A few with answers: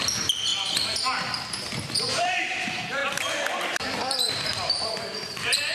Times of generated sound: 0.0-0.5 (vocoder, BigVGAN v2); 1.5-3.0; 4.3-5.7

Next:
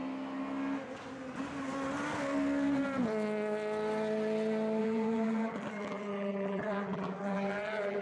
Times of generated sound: 4.8-8.0 (vocoder, BigVGAN v2)